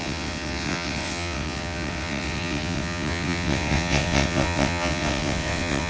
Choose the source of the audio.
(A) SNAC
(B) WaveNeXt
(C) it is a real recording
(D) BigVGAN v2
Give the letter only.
B